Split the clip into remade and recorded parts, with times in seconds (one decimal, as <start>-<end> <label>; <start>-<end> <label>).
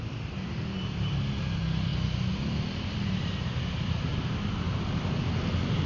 0.0-5.9 recorded